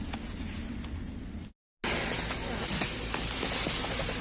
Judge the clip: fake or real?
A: real